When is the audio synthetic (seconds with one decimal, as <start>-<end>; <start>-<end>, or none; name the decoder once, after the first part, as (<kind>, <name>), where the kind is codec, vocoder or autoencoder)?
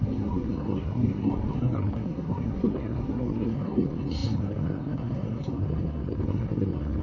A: 0.0-7.0 (codec, SNAC)